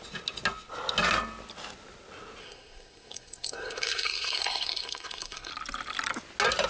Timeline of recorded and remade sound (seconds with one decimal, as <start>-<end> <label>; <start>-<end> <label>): 0.0-2.4 recorded; 2.4-5.5 remade; 5.5-6.7 recorded

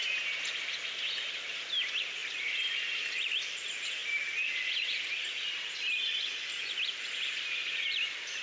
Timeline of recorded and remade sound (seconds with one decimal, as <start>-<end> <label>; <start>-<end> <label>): 0.0-8.4 recorded

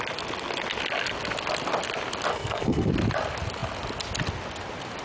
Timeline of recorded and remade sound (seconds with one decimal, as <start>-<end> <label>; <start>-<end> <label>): 0.0-2.3 recorded; 2.3-2.9 remade; 2.9-5.0 recorded

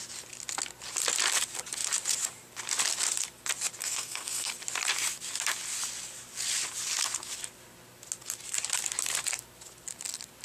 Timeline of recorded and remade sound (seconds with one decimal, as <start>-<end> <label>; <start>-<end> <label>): 0.0-3.8 recorded; 3.8-4.5 remade; 4.5-10.4 recorded

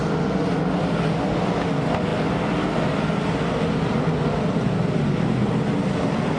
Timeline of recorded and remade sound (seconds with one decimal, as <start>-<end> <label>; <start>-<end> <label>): 0.0-6.4 recorded

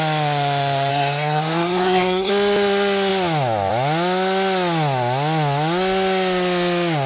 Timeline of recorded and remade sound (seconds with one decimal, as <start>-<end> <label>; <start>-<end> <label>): 0.0-0.9 recorded; 0.9-2.3 remade; 2.3-7.1 recorded

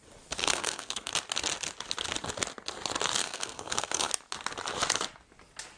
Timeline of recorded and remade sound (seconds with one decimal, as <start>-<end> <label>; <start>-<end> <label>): 0.0-0.4 recorded; 0.4-1.1 remade; 1.1-3.2 recorded; 3.2-4.1 remade; 4.1-5.8 recorded